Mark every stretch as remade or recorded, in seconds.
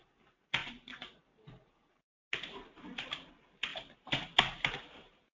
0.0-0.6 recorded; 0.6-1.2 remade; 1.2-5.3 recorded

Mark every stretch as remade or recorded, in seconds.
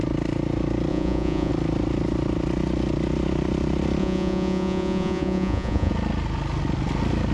0.0-0.9 recorded; 0.9-1.5 remade; 1.5-4.0 recorded; 4.0-5.9 remade; 5.9-7.3 recorded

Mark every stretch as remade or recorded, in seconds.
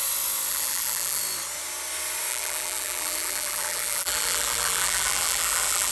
0.0-0.5 recorded; 0.5-1.2 remade; 1.2-2.3 recorded; 2.3-5.9 remade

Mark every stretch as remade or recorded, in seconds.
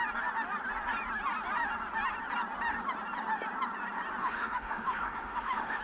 0.0-4.2 recorded; 4.2-5.8 remade